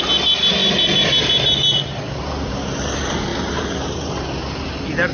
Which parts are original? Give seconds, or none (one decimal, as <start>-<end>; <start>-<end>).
0.0-5.1